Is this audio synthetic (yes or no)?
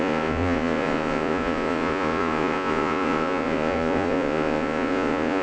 yes